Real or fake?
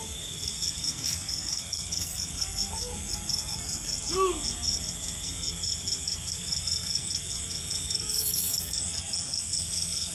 fake